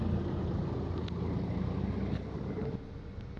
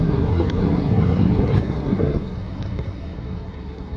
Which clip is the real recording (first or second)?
first